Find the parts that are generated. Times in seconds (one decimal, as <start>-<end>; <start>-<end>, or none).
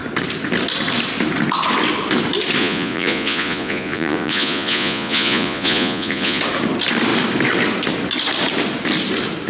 2.6-6.4